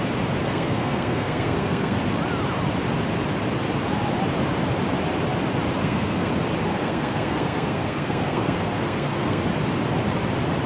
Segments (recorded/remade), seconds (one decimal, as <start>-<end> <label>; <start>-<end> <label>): 0.0-0.4 recorded; 0.4-2.0 remade; 2.0-5.8 recorded; 5.8-6.3 remade; 6.3-6.7 recorded; 6.7-9.4 remade; 9.4-10.7 recorded